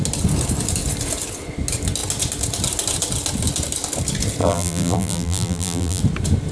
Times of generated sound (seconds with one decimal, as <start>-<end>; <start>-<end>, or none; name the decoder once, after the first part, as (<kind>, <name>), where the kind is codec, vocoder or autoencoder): 4.4-6.0 (vocoder, BigVGAN v2)